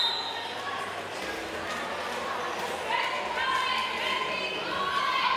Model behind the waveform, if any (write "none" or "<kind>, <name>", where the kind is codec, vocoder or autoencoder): none